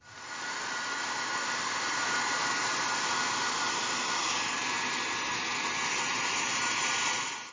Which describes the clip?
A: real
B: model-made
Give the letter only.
A